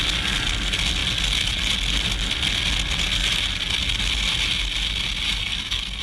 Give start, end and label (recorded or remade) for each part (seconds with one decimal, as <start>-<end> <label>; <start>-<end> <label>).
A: 0.0-5.4 recorded; 5.4-6.0 remade